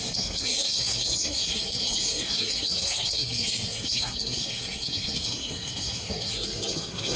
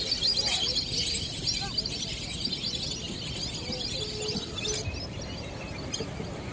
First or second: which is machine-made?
first